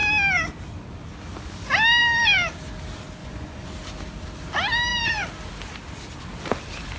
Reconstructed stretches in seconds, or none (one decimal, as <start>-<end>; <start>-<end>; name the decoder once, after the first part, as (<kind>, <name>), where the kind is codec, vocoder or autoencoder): 3.2-3.7 (vocoder, Vocos)